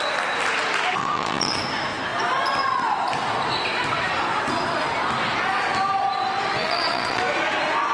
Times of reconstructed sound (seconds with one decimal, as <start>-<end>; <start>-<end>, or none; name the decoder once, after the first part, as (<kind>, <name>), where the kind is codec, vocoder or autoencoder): 1.0-1.6 (vocoder, Vocos); 6.6-7.2